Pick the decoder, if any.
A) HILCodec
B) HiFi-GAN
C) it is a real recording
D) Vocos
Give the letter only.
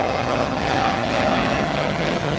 B